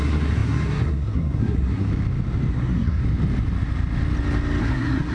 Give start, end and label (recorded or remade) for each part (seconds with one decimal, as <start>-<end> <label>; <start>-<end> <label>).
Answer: 0.0-1.9 remade; 1.9-2.5 recorded; 2.5-3.0 remade; 3.0-4.6 recorded; 4.6-5.1 remade